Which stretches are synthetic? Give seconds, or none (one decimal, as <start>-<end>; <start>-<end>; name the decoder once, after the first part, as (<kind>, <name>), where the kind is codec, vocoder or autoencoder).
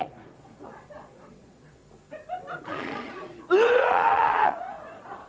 0.0-1.8 (vocoder, Vocos); 2.6-5.3